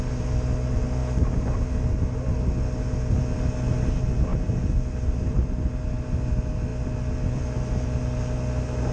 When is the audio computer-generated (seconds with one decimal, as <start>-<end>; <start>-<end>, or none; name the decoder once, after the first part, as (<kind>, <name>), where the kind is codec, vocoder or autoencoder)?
none